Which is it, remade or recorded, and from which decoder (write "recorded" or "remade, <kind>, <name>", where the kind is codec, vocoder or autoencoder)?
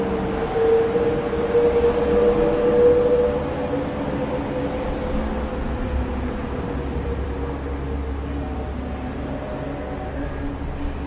recorded